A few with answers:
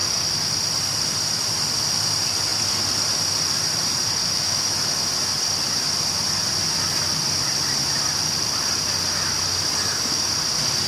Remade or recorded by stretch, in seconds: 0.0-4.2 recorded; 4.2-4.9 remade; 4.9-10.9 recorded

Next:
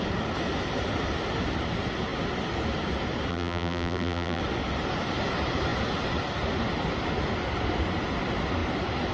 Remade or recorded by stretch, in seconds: 0.0-3.3 recorded; 3.3-4.4 remade; 4.4-9.1 recorded

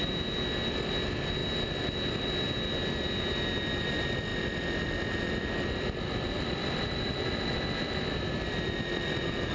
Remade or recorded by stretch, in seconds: 0.0-4.3 recorded; 4.3-9.5 remade

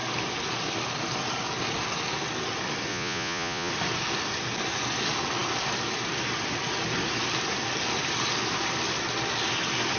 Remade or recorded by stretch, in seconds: 0.0-2.9 recorded; 2.9-3.7 remade; 3.7-10.0 recorded

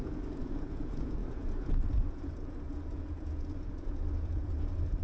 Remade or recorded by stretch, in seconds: 0.0-5.0 remade

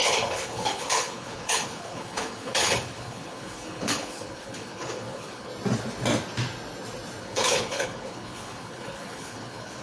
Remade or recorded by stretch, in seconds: 0.0-5.5 remade; 5.5-7.2 recorded; 7.2-9.8 remade

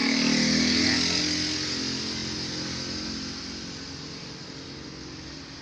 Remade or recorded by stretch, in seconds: 0.0-5.6 recorded

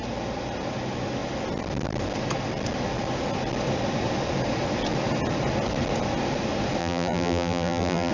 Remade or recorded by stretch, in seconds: 0.0-6.8 recorded; 6.8-8.1 remade